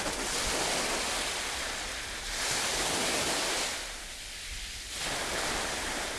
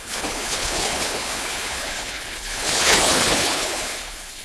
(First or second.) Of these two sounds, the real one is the first